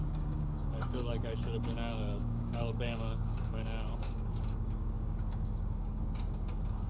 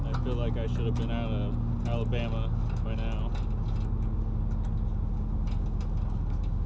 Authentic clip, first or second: second